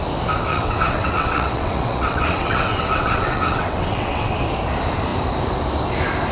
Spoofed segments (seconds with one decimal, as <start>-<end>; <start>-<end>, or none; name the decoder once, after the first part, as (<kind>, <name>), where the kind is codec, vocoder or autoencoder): 0.5-4.3 (vocoder, WaveNeXt)